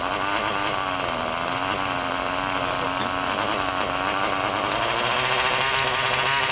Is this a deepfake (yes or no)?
no